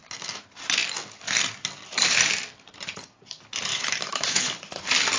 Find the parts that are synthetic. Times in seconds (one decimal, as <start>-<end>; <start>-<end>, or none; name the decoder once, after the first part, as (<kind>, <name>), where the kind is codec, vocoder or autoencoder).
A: 3.7-4.5 (autoencoder, DAC-VAE)